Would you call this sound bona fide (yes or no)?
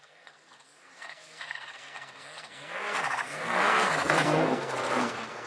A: no